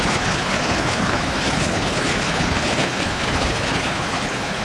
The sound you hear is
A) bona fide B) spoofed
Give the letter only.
B